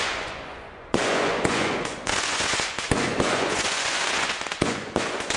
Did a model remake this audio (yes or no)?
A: yes